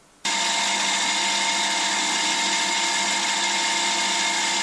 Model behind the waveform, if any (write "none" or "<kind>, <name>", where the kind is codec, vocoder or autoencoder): none